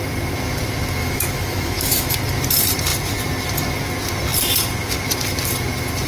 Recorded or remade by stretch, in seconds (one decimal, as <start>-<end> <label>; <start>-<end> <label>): 0.0-1.0 recorded; 1.0-2.1 remade; 2.1-6.1 recorded

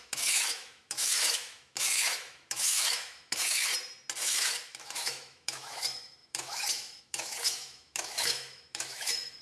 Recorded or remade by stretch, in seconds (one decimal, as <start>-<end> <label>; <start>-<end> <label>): 0.0-3.7 remade; 3.7-4.2 recorded; 4.2-9.4 remade

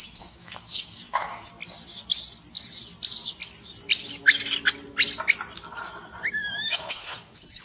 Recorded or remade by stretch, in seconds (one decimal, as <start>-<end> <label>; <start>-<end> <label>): 0.0-1.5 remade; 1.5-6.4 recorded; 6.4-7.6 remade

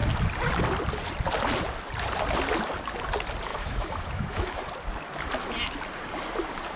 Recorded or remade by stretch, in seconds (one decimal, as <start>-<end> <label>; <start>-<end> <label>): 0.0-3.5 recorded; 3.5-4.6 remade; 4.6-6.8 recorded

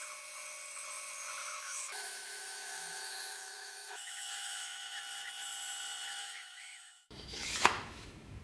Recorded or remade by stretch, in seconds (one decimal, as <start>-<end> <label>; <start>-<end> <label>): 0.0-1.4 recorded; 1.4-5.0 remade; 5.0-6.2 recorded; 6.2-8.4 remade

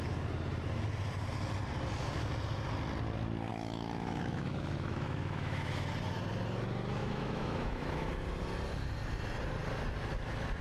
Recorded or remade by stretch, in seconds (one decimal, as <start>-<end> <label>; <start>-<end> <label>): 0.0-3.5 recorded; 3.5-5.9 remade; 5.9-7.0 recorded; 7.0-8.1 remade; 8.1-10.6 recorded

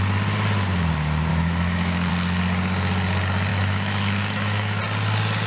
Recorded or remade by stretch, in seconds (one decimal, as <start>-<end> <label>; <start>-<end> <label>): 0.0-1.3 recorded; 1.3-2.1 remade; 2.1-3.5 recorded; 3.5-4.8 remade; 4.8-5.5 recorded